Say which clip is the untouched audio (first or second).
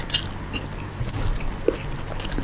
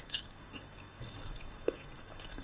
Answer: first